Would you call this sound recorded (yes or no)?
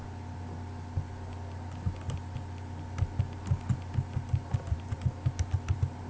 yes